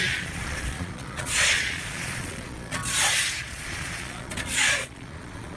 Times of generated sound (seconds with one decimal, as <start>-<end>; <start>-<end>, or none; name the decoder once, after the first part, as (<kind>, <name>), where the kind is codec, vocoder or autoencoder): 0.0-2.8 (vocoder, Vocos); 3.4-5.6